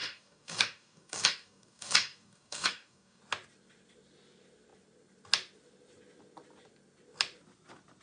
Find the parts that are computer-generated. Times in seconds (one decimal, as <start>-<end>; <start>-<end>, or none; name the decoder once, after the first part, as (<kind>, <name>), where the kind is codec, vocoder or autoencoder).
0.0-3.2 (codec, DAC)

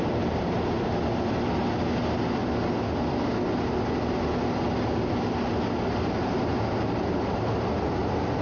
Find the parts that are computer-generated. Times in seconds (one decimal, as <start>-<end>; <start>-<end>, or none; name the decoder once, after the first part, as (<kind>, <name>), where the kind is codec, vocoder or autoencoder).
none

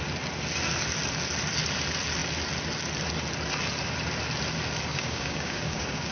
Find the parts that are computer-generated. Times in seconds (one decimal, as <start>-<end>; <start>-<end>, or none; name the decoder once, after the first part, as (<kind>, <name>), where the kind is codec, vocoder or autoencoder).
4.9-6.1 (codec, DAC)